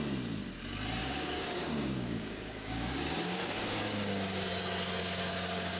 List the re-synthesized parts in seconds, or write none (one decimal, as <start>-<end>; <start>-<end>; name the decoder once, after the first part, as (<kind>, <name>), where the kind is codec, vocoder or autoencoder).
1.0-4.5 (codec, DAC); 5.0-5.8